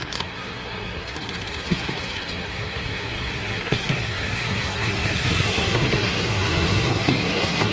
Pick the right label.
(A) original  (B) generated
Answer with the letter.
B